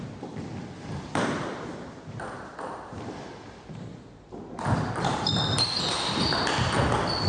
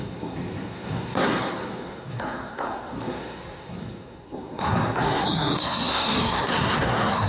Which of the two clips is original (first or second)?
first